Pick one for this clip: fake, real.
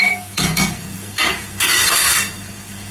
fake